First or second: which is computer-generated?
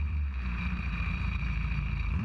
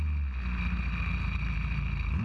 first